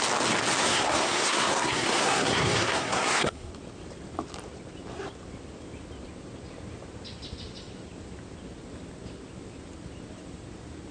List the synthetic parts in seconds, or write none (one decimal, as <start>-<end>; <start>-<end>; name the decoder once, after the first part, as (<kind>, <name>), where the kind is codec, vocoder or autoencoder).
0.6-3.5 (codec, SNAC)